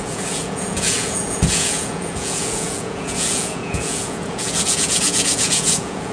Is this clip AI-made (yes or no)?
yes